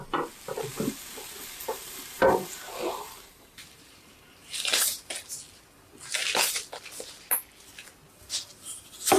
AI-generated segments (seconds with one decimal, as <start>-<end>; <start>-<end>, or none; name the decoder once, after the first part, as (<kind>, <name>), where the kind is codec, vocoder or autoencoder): 0.7-5.1 (vocoder, BigVGAN v2)